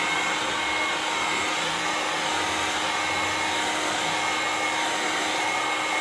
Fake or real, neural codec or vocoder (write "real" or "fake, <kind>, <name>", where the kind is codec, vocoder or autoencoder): real